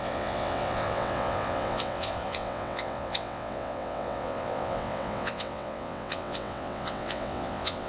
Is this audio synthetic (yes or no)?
yes